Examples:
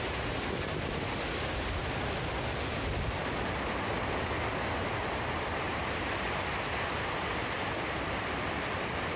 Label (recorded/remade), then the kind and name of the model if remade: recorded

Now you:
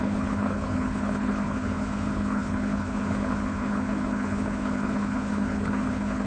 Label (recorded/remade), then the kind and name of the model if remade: remade, codec, HILCodec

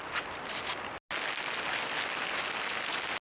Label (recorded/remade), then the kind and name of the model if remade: recorded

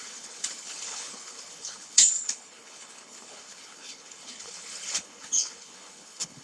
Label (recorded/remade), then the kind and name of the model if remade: remade, codec, HILCodec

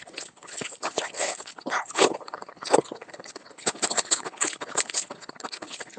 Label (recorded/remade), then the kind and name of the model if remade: remade, codec, HILCodec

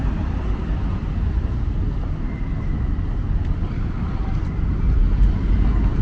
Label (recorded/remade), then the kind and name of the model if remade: recorded